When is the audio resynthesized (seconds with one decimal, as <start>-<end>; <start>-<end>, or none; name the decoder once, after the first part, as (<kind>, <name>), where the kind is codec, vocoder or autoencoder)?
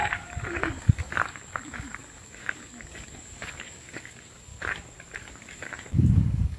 0.0-4.5 (codec, DAC); 5.3-6.6